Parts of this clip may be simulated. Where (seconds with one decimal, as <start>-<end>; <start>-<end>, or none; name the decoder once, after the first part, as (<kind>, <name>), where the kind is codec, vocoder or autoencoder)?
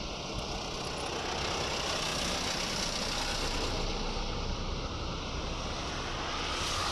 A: none